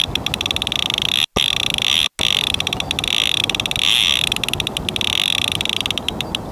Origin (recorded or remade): recorded